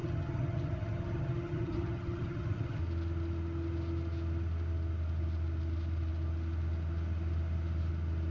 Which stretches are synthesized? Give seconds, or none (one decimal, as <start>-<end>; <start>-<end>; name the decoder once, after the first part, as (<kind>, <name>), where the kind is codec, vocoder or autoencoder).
0.0-2.8 (vocoder, HiFi-GAN)